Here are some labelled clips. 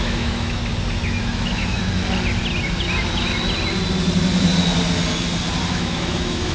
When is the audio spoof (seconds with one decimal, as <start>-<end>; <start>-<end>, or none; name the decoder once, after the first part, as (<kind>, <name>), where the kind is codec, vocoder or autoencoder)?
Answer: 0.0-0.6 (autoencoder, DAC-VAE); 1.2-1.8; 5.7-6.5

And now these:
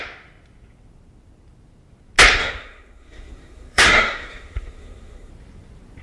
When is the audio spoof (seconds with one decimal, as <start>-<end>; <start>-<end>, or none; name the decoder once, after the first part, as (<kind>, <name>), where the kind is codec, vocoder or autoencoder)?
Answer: 2.4-5.3 (codec, SNAC)

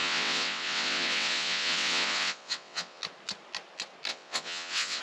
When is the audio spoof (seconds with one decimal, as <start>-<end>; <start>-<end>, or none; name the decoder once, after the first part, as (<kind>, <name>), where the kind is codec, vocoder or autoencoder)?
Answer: 0.0-3.0 (vocoder, WaveNeXt); 4.1-5.0